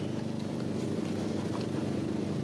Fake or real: real